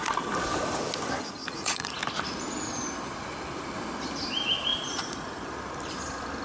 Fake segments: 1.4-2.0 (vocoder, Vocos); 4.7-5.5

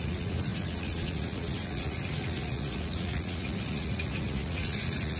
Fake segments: 0.0-5.2 (vocoder, Vocos)

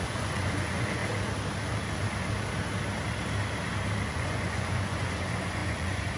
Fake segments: 0.0-1.0 (vocoder, Vocos); 4.1-6.2

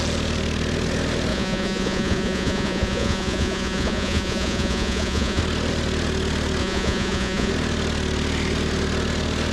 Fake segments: 1.3-5.4 (vocoder, Vocos); 6.6-7.5